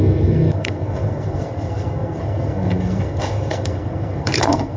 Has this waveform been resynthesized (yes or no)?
yes